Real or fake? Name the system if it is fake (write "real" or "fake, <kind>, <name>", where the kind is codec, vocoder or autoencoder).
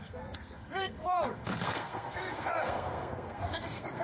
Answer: fake, codec, SNAC